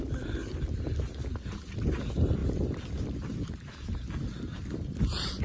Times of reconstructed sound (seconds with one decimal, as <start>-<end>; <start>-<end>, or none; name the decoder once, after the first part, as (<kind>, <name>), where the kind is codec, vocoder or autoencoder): none